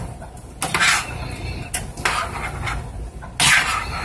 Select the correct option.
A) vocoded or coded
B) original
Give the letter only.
B